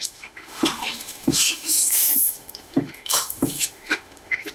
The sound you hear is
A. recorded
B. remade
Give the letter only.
B